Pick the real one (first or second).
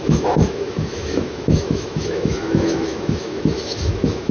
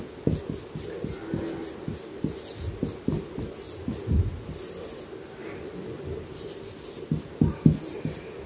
second